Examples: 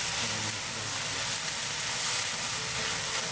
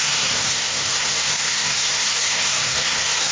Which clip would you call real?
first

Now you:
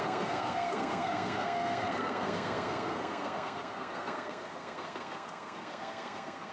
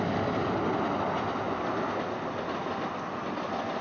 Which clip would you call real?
second